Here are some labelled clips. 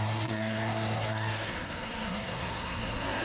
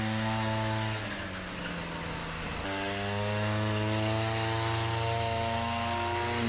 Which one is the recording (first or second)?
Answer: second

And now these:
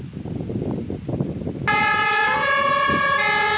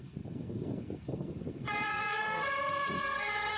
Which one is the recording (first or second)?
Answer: first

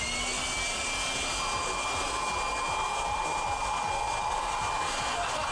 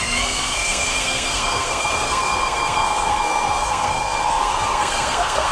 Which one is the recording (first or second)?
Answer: first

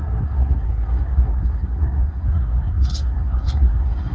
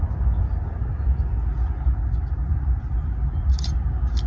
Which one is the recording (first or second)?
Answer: second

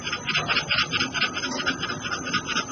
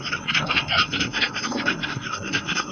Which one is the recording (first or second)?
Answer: first